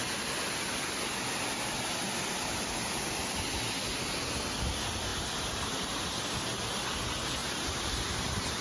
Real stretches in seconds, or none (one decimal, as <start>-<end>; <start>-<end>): 0.0-5.1; 6.2-7.4